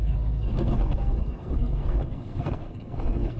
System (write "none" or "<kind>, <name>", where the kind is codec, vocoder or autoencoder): codec, SNAC